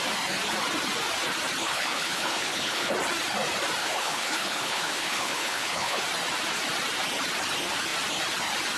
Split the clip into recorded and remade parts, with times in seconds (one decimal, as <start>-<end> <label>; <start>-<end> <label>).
0.0-1.6 recorded; 1.6-2.9 remade; 2.9-3.8 recorded; 3.8-6.0 remade; 6.0-8.8 recorded